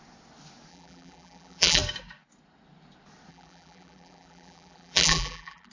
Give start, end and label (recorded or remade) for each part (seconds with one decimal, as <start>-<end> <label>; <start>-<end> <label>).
0.0-0.7 recorded; 0.7-1.8 remade; 1.8-3.3 recorded; 3.3-5.7 remade